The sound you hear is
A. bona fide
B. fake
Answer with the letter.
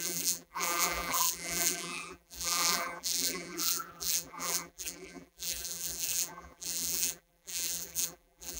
B